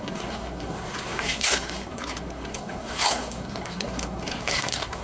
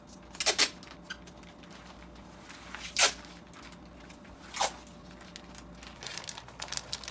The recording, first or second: second